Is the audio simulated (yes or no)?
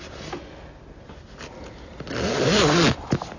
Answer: no